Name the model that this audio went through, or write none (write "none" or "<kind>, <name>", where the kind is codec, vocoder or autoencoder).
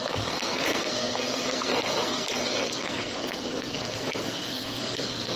codec, SNAC